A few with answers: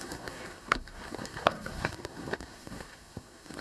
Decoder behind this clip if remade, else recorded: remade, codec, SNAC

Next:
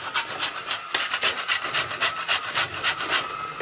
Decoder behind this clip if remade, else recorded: recorded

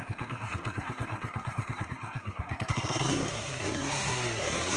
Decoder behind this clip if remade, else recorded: remade, codec, SNAC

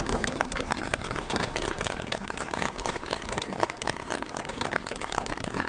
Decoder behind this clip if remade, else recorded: remade, codec, SNAC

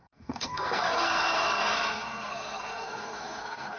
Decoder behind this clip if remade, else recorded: remade, codec, SNAC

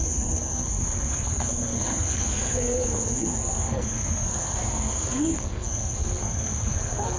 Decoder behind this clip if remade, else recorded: remade, codec, SNAC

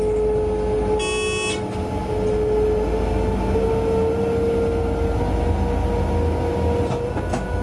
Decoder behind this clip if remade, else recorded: recorded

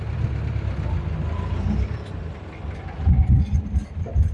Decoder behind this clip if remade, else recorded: recorded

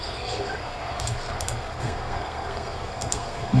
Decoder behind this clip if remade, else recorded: remade, codec, SNAC